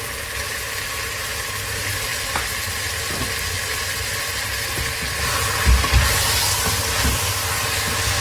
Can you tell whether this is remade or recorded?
recorded